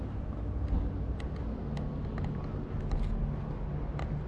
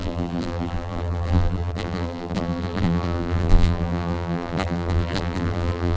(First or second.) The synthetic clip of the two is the second